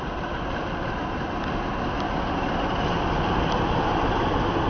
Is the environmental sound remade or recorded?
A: recorded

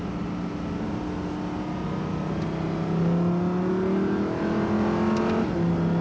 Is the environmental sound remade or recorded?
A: recorded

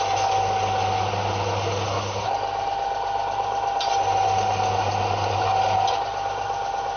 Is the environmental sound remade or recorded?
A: recorded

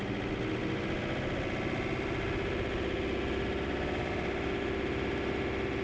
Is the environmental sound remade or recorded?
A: recorded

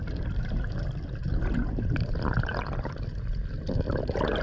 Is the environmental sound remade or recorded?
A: recorded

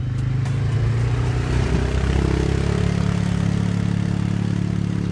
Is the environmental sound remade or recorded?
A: recorded